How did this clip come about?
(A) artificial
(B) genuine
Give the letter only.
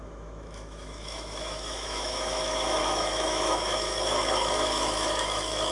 A